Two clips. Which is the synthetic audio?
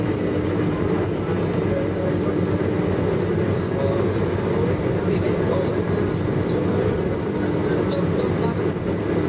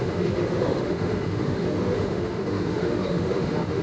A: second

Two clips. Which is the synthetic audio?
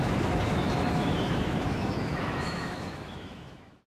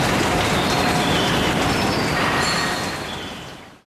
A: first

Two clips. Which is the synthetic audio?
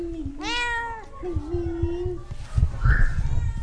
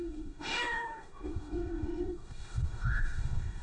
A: second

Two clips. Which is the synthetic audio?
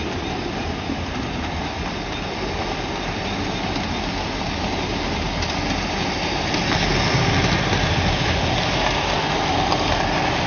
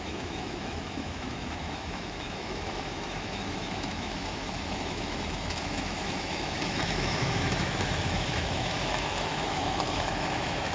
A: second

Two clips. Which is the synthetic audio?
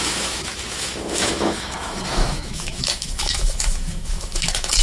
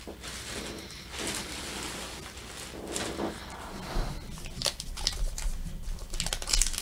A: first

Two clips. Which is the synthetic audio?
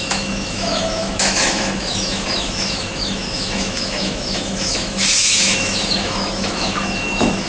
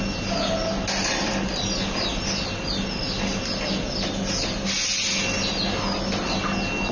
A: first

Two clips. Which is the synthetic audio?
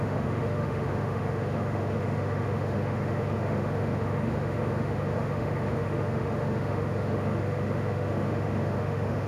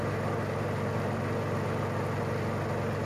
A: first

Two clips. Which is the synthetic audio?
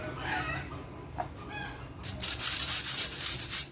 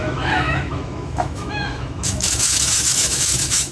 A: second